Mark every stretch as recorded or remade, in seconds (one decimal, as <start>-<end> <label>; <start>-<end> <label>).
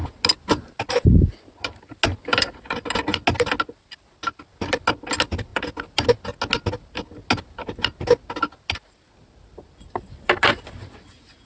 0.0-11.5 recorded